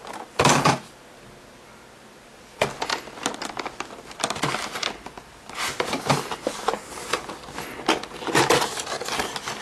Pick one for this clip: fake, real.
real